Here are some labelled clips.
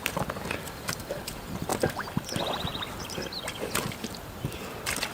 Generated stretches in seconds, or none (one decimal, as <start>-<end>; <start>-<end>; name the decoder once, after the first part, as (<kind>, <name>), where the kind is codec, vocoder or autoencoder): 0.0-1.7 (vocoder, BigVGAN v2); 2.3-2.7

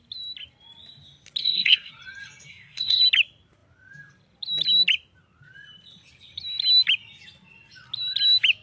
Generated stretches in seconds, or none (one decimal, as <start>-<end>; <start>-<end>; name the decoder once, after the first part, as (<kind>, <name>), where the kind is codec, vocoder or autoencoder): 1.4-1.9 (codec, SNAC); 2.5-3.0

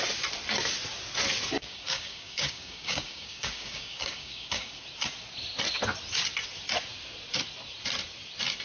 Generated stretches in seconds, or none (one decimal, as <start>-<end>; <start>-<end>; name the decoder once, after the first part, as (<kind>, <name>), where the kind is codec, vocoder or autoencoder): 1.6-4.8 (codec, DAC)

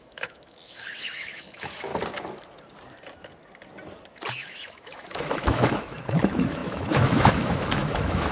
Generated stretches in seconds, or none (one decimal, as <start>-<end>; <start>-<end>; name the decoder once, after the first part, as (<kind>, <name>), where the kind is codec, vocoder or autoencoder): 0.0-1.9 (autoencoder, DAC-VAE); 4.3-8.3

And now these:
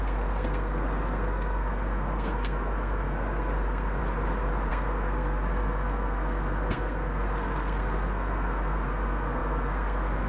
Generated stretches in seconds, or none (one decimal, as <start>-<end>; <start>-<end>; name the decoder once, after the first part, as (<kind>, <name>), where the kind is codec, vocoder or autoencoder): 0.0-4.0 (codec, SNAC); 4.7-10.3

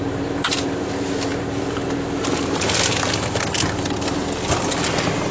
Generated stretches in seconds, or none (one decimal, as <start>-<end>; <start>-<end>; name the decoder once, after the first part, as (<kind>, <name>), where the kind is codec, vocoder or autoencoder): none